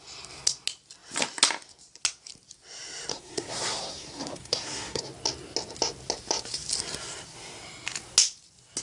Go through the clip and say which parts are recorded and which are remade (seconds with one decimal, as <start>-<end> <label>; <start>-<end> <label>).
0.0-3.1 recorded; 3.1-5.0 remade; 5.0-8.8 recorded